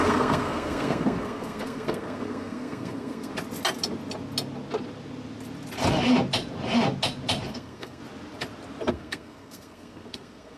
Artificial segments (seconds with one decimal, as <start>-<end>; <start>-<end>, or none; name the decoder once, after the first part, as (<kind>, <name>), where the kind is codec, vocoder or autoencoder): 0.0-3.3 (codec, SNAC); 7.5-8.0; 8.9-10.6